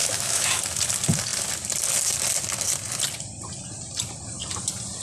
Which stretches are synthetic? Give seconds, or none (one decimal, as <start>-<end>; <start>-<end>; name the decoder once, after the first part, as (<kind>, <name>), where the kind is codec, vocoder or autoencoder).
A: 0.0-0.6 (autoencoder, DAC-VAE)